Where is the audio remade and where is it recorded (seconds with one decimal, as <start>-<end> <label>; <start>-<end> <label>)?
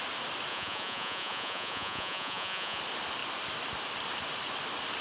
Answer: 0.0-0.5 recorded; 0.5-2.8 remade; 2.8-5.0 recorded